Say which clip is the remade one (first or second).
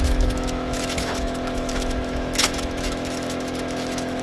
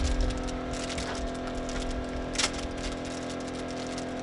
first